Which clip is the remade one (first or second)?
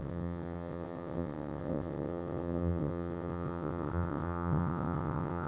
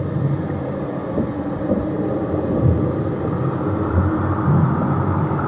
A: first